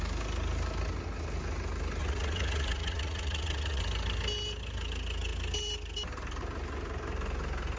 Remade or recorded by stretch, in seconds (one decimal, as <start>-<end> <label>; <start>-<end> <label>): 0.0-2.0 recorded; 2.0-3.8 remade; 3.8-7.8 recorded